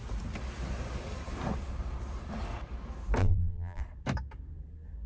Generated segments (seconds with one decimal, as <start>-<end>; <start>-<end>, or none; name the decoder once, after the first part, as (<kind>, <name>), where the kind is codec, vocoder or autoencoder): 3.2-3.8 (vocoder, BigVGAN v2)